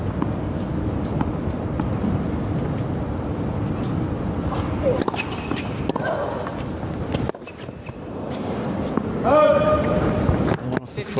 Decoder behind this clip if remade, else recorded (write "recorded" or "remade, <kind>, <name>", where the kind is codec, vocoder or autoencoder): recorded